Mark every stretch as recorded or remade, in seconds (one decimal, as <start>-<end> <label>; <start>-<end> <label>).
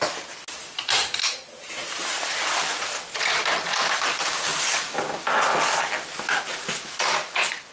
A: 0.0-7.7 recorded